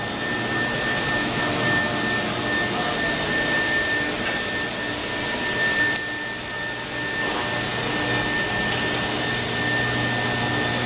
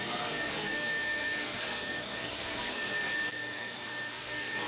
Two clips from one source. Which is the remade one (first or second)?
second